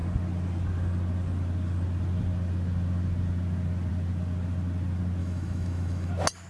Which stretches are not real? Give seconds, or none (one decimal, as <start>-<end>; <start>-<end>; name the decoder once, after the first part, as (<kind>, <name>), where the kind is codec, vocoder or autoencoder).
5.2-6.1 (autoencoder, DAC-VAE)

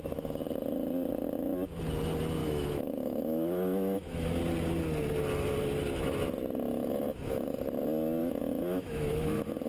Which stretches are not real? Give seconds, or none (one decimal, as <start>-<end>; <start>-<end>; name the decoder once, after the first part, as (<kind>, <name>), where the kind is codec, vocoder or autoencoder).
2.4-4.4 (autoencoder, DAC-VAE); 6.7-7.6; 8.2-9.7

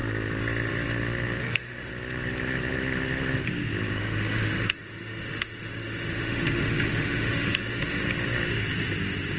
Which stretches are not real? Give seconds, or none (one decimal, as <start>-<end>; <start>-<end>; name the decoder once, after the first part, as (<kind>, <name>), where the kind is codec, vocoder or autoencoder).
1.4-1.9 (autoencoder, DAC-VAE); 4.0-8.0